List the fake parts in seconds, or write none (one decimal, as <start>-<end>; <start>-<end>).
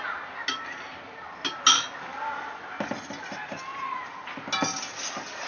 3.7-4.3